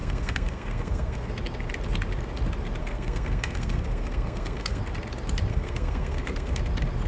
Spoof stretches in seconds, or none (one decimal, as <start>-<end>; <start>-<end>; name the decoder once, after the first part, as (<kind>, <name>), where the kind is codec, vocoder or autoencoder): 0.0-1.3 (codec, SNAC); 2.8-4.8; 5.5-6.6